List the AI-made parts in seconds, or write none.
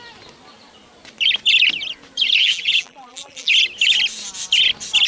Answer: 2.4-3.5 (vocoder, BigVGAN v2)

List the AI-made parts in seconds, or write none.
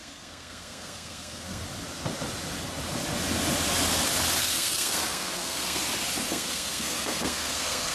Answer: 0.0-1.6 (codec, SNAC); 4.4-5.8; 6.3-7.9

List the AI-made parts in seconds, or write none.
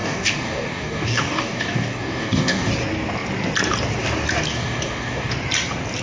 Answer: 0.0-2.7 (codec, DAC); 4.5-5.3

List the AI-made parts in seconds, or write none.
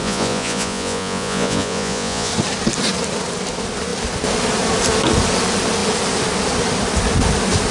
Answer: 0.0-2.3 (vocoder, Vocos)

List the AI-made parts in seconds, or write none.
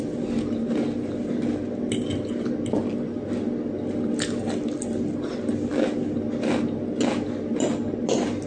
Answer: none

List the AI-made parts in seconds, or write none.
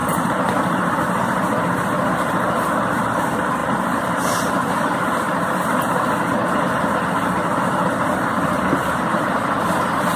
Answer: 0.0-1.0 (vocoder, BigVGAN v2); 3.6-4.7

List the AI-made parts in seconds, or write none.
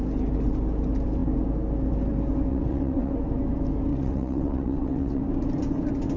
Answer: 2.5-3.1 (vocoder, WaveNeXt); 3.9-5.2